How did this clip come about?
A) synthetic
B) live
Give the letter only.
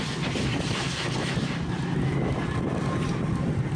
B